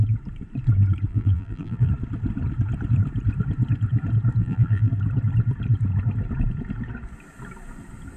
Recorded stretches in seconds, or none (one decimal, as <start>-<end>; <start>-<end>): 0.0-1.1; 1.9-4.4; 4.9-8.2

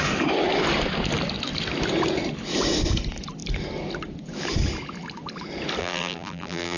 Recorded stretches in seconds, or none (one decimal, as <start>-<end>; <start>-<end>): 0.0-5.8

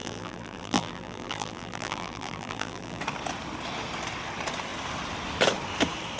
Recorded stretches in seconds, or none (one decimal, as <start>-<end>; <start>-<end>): 3.0-6.2

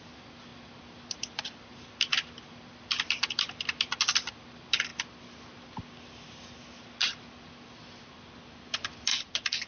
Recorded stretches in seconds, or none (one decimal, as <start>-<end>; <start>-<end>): 0.0-9.1